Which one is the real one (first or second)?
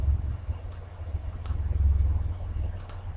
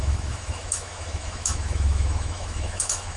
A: first